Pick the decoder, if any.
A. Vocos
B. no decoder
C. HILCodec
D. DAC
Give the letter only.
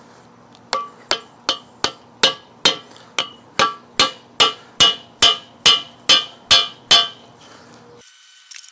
B